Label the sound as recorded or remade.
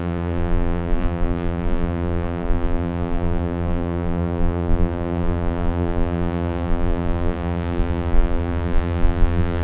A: remade